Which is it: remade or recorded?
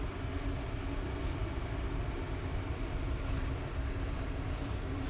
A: recorded